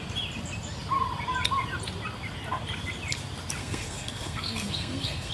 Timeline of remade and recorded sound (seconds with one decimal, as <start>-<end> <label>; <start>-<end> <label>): 0.0-3.6 recorded; 3.6-5.3 remade